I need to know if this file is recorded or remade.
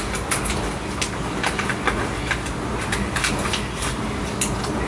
recorded